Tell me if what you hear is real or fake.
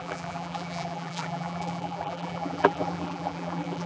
fake